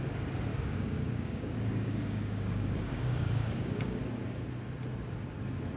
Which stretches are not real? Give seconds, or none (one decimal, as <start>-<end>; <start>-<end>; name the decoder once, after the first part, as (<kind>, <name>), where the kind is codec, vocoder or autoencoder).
0.5-4.0 (codec, DAC)